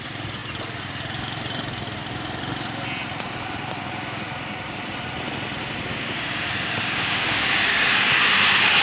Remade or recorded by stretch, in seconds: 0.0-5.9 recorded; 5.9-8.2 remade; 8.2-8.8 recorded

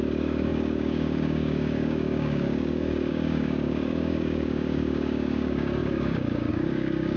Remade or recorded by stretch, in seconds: 0.0-7.2 remade

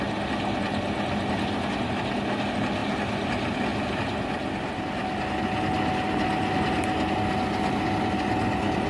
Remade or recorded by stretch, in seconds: 0.0-8.9 recorded